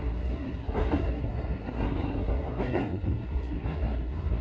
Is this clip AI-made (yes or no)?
yes